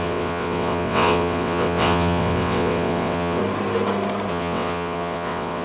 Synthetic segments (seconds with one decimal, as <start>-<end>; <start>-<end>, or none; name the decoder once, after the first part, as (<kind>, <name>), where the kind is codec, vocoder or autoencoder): 0.0-3.4 (vocoder, WaveNeXt); 4.3-5.6